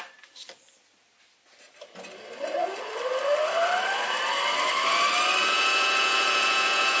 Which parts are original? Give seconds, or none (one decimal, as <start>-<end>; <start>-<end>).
0.0-5.4